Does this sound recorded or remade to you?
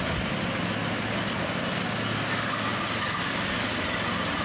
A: recorded